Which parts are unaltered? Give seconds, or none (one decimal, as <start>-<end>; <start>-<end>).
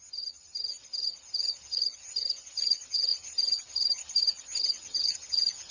none